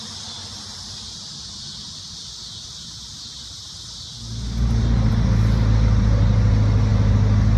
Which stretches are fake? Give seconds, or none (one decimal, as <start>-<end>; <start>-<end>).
none

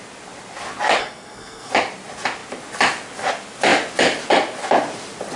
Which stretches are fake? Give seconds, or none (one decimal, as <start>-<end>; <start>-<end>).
1.0-1.7

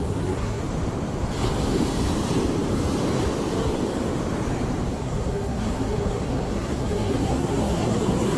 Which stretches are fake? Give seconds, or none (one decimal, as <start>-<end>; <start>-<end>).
0.0-0.6; 4.9-8.4

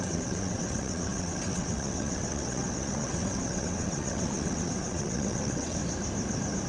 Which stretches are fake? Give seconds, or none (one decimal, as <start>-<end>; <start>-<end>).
0.0-5.8

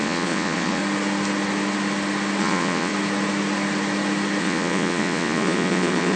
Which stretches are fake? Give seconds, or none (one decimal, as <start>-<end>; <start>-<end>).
0.0-0.8; 2.4-2.9; 4.4-6.2

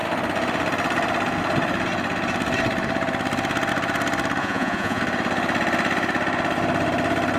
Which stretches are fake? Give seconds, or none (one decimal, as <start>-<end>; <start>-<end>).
4.4-5.0

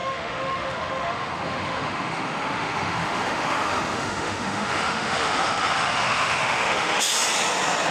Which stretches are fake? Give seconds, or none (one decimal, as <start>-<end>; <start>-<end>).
0.0-7.1

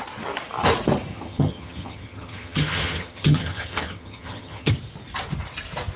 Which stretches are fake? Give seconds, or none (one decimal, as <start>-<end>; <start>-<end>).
1.1-4.7